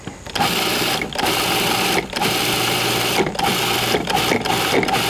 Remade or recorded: recorded